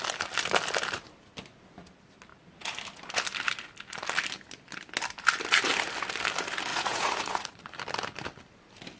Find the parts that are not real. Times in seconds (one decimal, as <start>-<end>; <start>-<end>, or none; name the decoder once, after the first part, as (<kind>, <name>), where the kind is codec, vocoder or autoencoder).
6.7-7.7 (vocoder, Vocos)